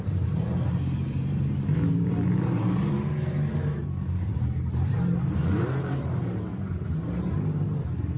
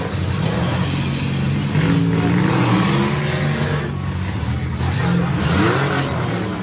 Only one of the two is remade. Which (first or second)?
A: first